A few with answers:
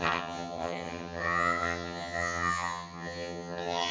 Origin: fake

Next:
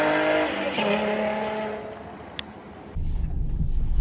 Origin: real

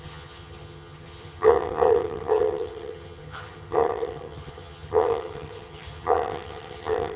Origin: fake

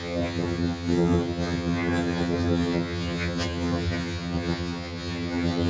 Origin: fake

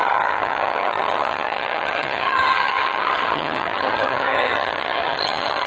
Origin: fake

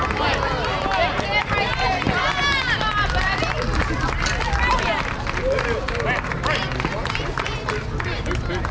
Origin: real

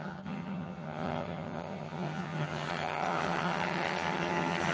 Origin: fake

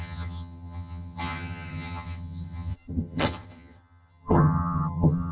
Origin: fake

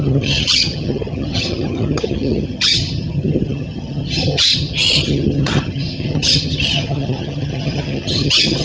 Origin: fake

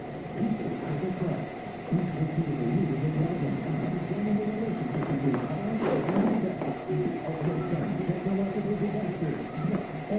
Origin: real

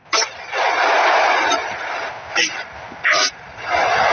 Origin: real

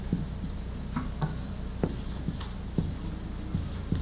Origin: real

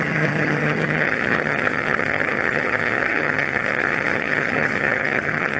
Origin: fake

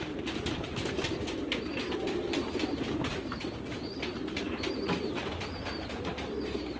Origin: real